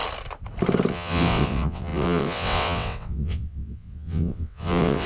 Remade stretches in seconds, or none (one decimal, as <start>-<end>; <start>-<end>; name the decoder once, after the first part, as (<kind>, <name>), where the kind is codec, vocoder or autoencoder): 0.9-5.1 (vocoder, WaveNeXt)